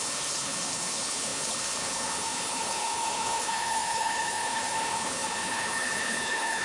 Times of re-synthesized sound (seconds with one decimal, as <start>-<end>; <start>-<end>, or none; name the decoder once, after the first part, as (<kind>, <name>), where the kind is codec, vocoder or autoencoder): 0.0-6.6 (codec, HILCodec)